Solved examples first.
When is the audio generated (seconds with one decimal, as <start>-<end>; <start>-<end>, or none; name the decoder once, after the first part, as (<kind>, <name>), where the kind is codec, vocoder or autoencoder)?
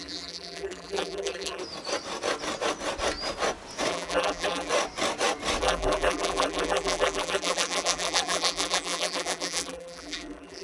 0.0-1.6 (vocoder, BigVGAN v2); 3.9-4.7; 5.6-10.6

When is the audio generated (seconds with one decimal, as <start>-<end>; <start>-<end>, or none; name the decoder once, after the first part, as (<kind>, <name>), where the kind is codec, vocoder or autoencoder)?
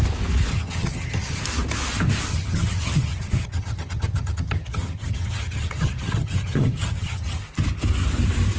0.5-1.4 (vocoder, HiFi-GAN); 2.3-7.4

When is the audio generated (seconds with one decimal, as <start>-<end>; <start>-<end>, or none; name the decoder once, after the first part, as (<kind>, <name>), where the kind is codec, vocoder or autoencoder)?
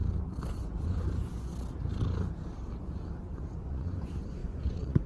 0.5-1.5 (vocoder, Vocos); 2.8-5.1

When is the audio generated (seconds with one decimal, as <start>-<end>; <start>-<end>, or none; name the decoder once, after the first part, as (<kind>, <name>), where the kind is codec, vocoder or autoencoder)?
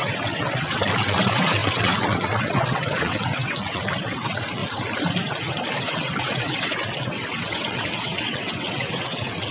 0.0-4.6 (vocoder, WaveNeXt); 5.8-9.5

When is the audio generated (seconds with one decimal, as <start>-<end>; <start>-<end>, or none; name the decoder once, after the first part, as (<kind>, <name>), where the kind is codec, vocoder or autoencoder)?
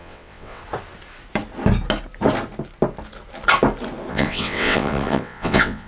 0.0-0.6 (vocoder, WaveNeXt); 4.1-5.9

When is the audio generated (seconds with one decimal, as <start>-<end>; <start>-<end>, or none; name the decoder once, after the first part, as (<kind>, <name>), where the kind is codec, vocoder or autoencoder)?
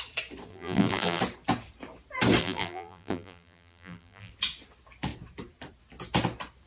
0.5-1.2 (vocoder, BigVGAN v2); 2.4-4.3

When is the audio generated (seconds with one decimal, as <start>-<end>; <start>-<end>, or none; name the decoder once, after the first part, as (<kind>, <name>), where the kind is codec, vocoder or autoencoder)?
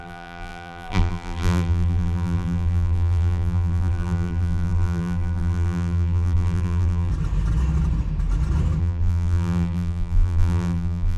0.0-7.1 (vocoder, BigVGAN v2); 8.8-11.2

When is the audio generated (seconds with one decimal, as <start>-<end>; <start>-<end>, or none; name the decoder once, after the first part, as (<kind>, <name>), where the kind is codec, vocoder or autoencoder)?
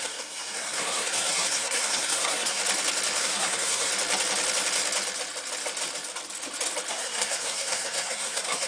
0.0-2.6 (codec, SNAC); 3.2-3.9; 6.9-8.7